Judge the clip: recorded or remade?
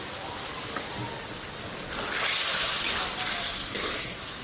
recorded